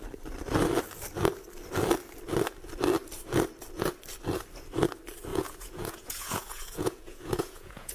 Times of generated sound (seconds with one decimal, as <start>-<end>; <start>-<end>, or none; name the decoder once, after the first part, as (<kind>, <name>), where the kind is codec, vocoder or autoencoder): 5.3-7.9 (vocoder, Vocos)